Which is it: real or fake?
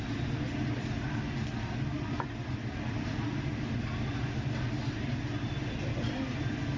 real